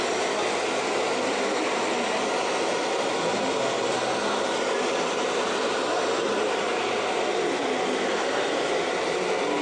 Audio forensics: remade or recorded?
recorded